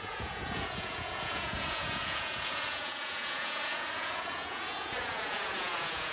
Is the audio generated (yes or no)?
yes